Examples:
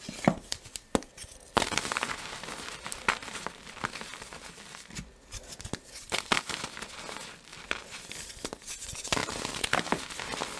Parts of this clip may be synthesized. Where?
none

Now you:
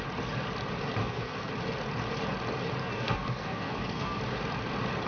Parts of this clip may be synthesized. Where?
1.0-1.5 (codec, SNAC); 2.8-4.2

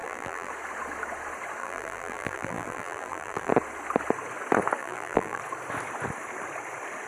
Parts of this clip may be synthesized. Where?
0.0-0.5 (vocoder, BigVGAN v2); 1.6-3.5; 4.8-5.4

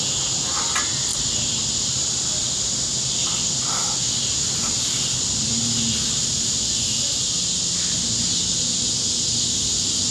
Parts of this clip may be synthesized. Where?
none

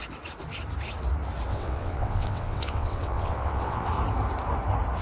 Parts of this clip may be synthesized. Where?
1.5-3.9 (vocoder, WaveNeXt)

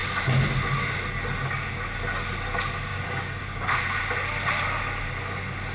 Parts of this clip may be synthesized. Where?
2.9-3.8 (codec, DAC)